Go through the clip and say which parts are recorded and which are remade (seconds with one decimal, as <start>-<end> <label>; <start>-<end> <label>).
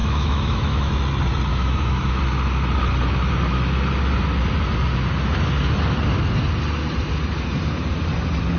0.0-0.9 remade; 0.9-1.5 recorded; 1.5-2.2 remade; 2.2-8.6 recorded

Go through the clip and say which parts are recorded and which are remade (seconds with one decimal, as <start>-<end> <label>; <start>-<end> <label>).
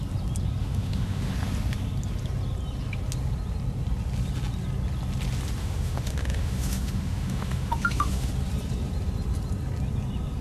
0.0-0.6 recorded; 0.6-1.3 remade; 1.3-5.6 recorded; 5.6-8.3 remade; 8.3-10.4 recorded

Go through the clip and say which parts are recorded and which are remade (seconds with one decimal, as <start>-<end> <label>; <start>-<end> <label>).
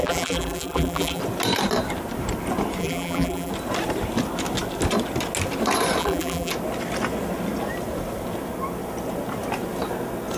0.0-1.2 remade; 1.2-2.8 recorded; 2.8-3.5 remade; 3.5-6.0 recorded; 6.0-6.5 remade; 6.5-10.4 recorded